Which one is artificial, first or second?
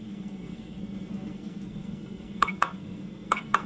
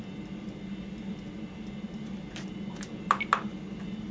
first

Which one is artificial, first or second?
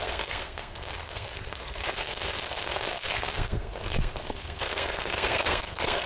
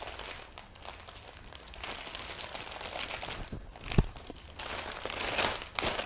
first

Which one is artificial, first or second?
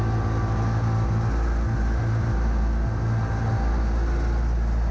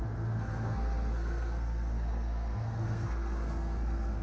second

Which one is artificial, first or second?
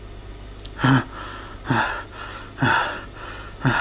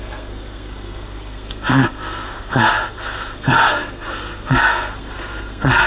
second